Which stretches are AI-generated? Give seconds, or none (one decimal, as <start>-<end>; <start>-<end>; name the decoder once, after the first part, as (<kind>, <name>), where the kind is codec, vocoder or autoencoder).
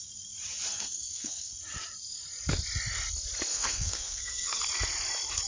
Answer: 0.7-1.5 (codec, SNAC); 3.5-4.6